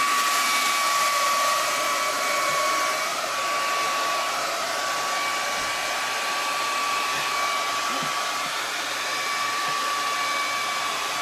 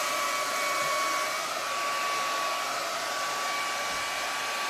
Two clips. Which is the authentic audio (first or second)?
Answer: second